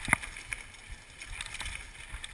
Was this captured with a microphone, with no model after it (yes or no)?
yes